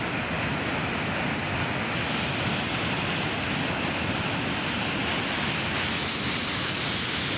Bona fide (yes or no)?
yes